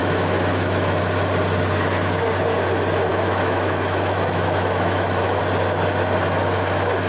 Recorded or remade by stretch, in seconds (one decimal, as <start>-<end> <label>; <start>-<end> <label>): 0.0-1.0 remade; 1.0-3.1 recorded; 3.1-5.4 remade; 5.4-7.1 recorded